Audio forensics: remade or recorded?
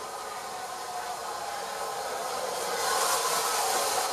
recorded